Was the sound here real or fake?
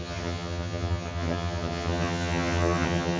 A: fake